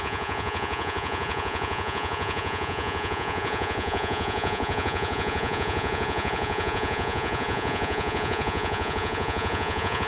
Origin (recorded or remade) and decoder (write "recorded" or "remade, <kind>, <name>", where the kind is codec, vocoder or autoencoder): remade, vocoder, Vocos